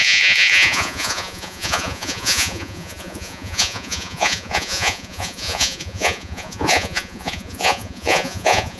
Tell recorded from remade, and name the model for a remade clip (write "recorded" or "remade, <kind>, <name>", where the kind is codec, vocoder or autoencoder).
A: remade, vocoder, Vocos